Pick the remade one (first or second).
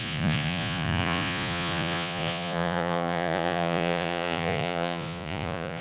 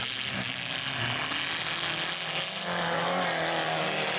first